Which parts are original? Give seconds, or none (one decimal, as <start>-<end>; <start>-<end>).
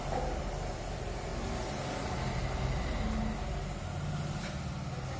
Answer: 0.0-5.2